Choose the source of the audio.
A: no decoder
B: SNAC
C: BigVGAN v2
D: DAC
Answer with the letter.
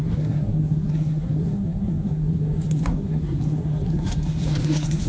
B